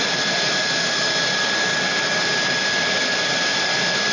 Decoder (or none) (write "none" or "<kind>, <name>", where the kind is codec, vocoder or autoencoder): none